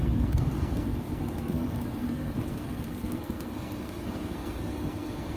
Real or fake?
fake